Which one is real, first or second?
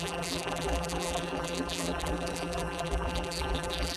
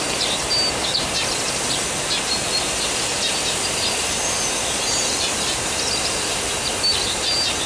second